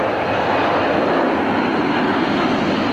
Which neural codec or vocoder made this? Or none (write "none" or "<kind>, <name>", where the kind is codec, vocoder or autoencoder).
none